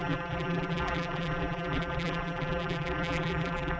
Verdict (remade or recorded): remade